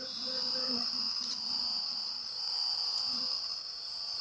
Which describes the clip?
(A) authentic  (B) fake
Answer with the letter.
B